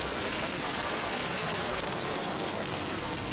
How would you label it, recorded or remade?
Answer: remade